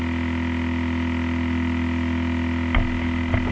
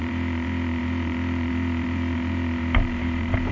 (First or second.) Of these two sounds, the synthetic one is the second